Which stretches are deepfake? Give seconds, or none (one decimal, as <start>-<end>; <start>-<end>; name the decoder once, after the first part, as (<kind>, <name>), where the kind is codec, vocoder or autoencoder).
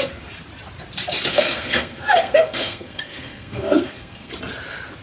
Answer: 1.3-4.3 (codec, SNAC)